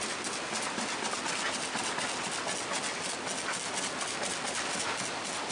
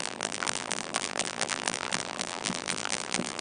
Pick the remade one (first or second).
second